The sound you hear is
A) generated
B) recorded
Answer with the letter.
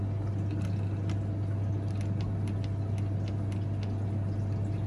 B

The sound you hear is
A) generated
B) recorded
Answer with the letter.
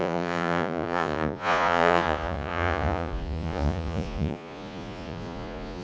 A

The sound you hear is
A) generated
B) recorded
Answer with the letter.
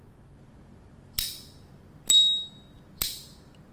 B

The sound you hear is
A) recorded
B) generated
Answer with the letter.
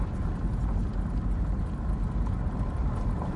A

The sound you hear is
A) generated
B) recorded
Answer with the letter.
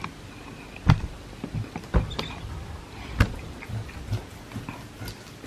B